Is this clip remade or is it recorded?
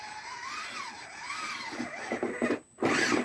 recorded